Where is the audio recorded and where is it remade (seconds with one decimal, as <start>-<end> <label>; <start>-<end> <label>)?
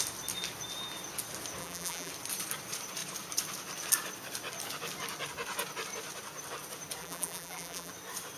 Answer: 0.0-1.6 recorded; 1.6-2.1 remade; 2.1-7.0 recorded; 7.0-7.9 remade; 7.9-8.4 recorded